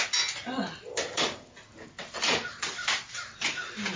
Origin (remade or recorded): recorded